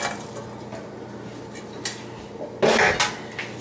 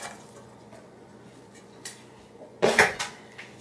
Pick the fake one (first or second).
second